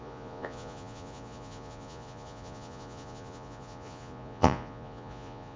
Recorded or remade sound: remade